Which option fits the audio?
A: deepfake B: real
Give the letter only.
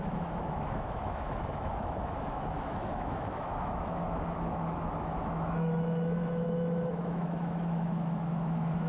A